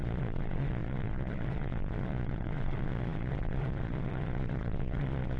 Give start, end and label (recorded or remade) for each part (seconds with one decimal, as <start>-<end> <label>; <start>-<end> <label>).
0.0-5.4 remade